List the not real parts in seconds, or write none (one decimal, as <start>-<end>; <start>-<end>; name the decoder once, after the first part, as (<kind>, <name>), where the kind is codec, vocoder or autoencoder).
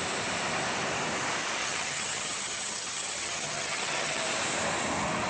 1.6-4.2 (vocoder, HiFi-GAN)